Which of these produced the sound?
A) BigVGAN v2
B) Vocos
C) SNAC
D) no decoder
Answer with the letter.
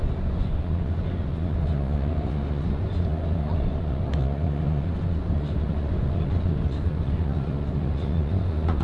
B